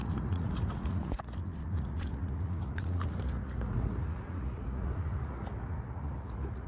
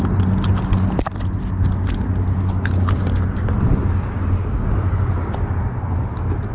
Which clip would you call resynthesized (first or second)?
first